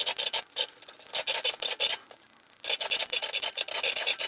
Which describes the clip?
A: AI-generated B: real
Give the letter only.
B